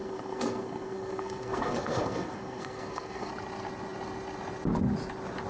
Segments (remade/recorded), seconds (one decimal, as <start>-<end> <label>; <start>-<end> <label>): 0.0-3.3 remade; 3.3-5.5 recorded